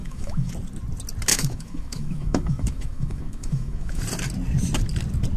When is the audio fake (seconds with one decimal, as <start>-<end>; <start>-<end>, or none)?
0.0-0.5; 1.3-4.0